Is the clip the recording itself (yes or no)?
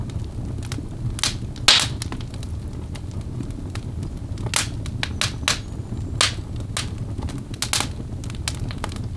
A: yes